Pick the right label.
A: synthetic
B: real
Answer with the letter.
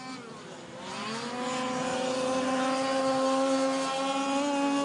B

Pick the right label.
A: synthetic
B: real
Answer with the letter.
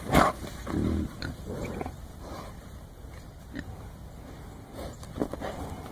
B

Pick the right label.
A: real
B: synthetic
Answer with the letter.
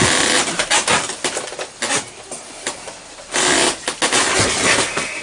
A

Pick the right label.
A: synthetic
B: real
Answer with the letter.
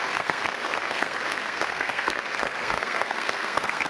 A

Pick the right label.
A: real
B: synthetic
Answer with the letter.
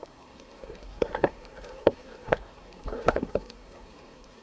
B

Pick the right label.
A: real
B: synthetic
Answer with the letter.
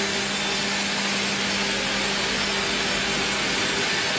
A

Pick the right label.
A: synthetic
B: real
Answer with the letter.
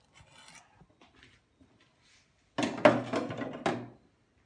B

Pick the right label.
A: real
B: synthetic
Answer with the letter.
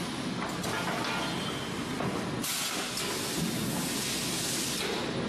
A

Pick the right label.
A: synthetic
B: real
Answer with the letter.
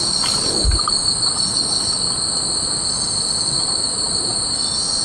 B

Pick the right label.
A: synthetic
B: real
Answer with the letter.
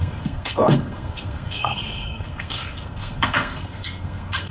A